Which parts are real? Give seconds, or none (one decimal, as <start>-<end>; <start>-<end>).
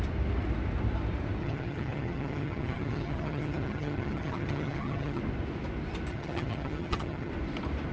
0.0-1.4; 5.2-6.1; 7.3-7.9